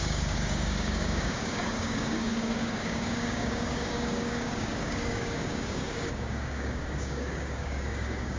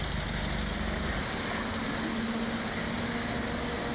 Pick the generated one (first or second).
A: first